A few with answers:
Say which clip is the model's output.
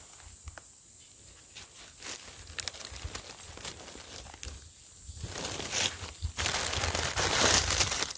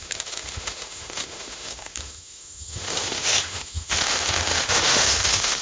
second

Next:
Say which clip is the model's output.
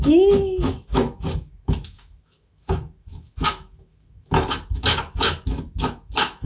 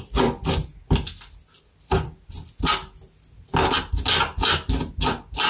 first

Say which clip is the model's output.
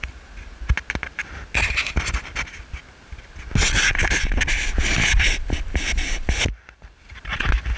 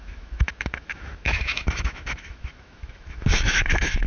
second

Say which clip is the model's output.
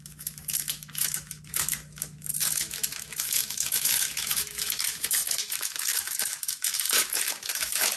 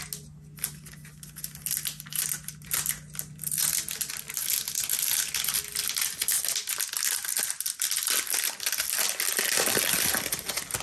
first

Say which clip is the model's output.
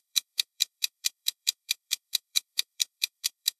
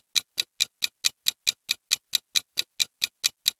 first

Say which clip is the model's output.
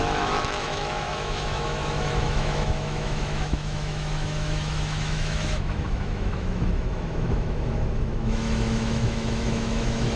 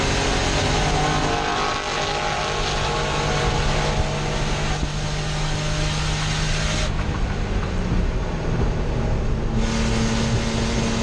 first